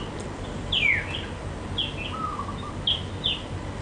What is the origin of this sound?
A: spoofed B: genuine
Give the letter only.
B